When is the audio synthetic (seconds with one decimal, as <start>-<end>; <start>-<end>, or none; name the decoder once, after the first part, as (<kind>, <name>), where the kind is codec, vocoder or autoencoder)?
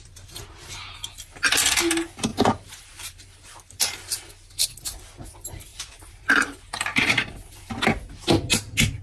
2.3-4.3 (vocoder, BigVGAN v2); 5.7-7.7